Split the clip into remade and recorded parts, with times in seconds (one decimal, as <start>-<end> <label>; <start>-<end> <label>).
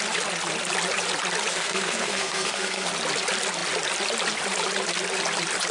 0.0-1.5 recorded; 1.5-2.9 remade; 2.9-5.7 recorded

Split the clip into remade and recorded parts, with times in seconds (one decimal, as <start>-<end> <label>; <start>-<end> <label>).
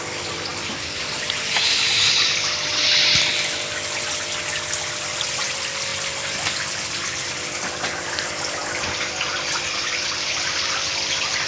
0.0-11.5 recorded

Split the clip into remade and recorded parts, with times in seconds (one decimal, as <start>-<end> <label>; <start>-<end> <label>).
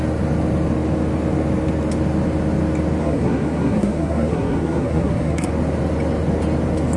0.0-3.0 recorded; 3.0-5.5 remade; 5.5-7.0 recorded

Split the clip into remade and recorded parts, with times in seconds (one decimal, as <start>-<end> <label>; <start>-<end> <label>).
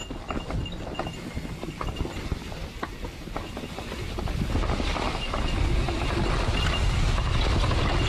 0.0-8.1 recorded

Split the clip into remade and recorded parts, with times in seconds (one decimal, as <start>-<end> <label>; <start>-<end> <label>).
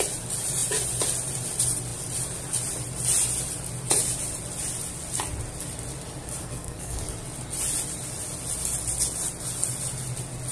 0.0-6.4 recorded; 6.4-7.0 remade; 7.0-10.5 recorded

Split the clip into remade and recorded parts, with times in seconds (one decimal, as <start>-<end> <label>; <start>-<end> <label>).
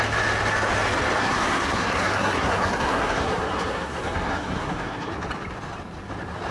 0.0-1.2 recorded; 1.2-5.1 remade; 5.1-6.5 recorded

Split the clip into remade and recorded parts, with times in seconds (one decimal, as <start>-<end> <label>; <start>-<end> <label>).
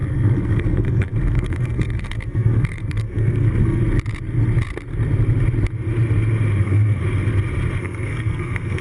0.0-3.8 remade; 3.8-6.6 recorded; 6.6-7.0 remade; 7.0-7.8 recorded; 7.8-8.8 remade